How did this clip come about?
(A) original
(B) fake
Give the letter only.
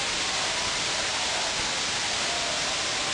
A